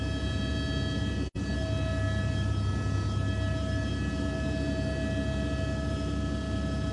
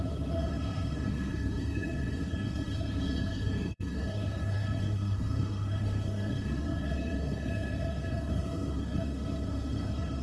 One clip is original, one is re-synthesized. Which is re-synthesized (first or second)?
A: second